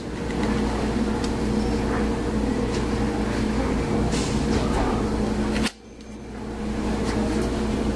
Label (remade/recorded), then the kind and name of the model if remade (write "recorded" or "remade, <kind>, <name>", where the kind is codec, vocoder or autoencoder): recorded